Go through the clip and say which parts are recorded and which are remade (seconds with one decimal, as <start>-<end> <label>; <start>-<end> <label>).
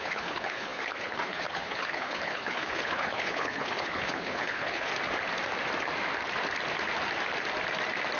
0.0-4.9 remade; 4.9-8.2 recorded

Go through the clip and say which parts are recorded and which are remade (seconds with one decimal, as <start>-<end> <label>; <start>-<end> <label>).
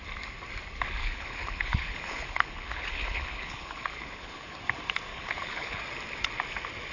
0.0-1.0 recorded; 1.0-4.6 remade; 4.6-5.1 recorded; 5.1-5.8 remade; 5.8-6.9 recorded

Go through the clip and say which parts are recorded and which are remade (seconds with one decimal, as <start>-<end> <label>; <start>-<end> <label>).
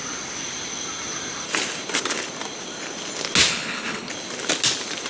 0.0-3.5 recorded; 3.5-4.1 remade; 4.1-5.1 recorded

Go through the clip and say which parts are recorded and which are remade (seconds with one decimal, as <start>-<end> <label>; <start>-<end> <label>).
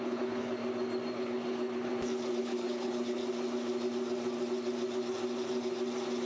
0.0-0.6 remade; 0.6-1.1 recorded; 1.1-1.9 remade; 1.9-2.4 recorded; 2.4-3.2 remade; 3.2-6.3 recorded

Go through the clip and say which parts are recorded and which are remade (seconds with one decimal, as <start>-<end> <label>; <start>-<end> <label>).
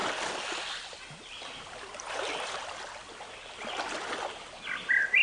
0.0-5.2 recorded